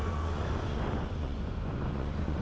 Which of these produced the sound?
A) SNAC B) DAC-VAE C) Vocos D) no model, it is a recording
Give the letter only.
C